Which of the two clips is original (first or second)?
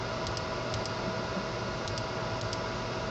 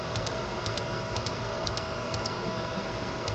first